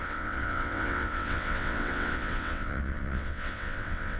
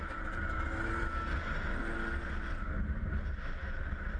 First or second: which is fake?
first